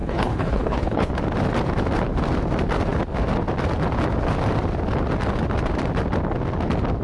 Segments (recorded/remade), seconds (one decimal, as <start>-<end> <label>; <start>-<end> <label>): 0.0-1.1 remade; 1.1-7.0 recorded